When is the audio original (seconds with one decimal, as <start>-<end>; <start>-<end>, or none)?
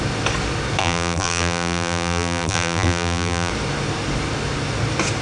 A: 0.0-0.8; 3.5-5.2